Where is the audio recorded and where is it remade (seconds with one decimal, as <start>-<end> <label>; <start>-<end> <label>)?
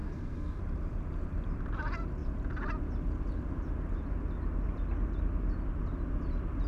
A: 0.0-0.6 remade; 0.6-6.7 recorded